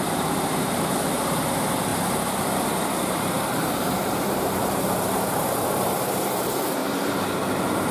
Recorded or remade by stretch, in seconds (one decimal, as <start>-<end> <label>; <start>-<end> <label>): 0.0-1.9 remade; 1.9-3.2 recorded; 3.2-6.8 remade; 6.8-7.9 recorded